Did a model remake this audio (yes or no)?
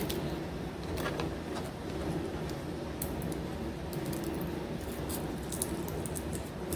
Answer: no